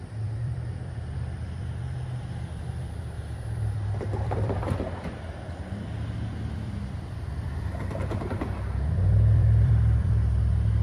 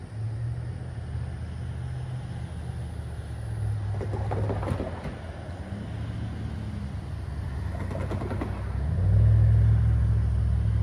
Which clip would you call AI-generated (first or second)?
first